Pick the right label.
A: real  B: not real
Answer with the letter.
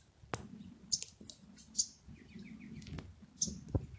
A